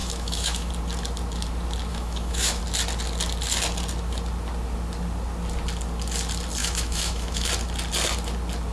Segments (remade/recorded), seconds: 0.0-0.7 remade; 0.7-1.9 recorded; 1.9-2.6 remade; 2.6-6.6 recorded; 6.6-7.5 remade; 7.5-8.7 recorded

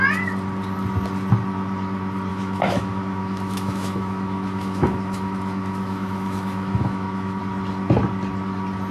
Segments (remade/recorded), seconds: 0.0-2.3 recorded; 2.3-7.4 remade; 7.4-8.9 recorded

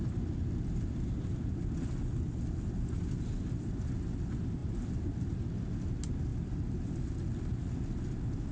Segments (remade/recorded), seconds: 0.0-8.5 recorded